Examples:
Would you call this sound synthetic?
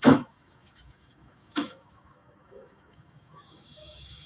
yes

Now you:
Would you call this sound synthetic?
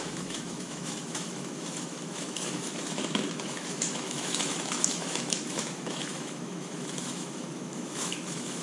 yes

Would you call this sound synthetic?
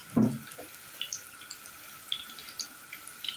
no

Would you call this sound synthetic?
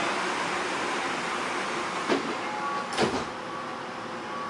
no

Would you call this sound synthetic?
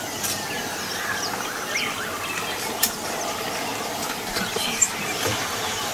no